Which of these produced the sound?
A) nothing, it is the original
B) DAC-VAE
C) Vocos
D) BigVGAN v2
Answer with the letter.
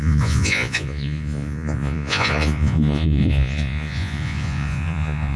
C